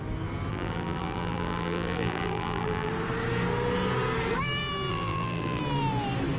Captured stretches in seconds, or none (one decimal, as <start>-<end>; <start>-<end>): 0.0-0.5; 2.9-4.9; 5.6-6.4

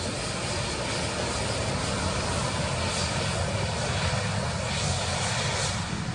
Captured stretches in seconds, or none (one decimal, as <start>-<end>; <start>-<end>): 0.0-6.1

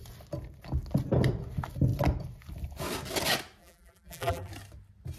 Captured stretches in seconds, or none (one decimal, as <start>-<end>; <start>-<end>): 0.0-3.6; 4.5-5.2

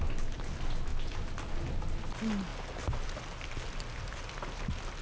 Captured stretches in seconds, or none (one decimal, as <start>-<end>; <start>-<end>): 0.0-5.0